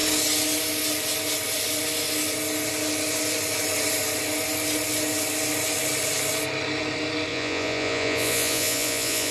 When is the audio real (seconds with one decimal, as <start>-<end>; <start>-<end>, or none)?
0.0-7.3